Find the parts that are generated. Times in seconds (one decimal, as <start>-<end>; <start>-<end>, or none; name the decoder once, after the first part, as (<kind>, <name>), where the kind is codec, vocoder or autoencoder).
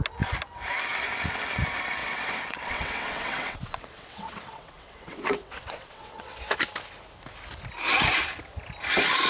2.0-6.6 (vocoder, WaveNeXt)